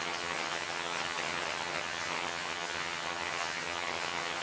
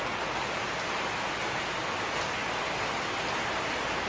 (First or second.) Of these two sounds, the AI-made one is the first